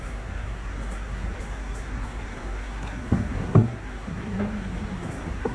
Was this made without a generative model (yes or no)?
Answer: no